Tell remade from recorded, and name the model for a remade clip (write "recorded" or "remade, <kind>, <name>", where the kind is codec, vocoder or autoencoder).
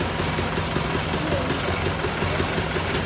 recorded